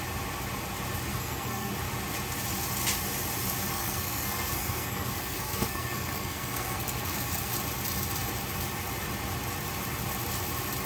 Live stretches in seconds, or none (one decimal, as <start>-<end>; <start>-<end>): 0.0-1.1; 1.7-3.7; 7.5-10.9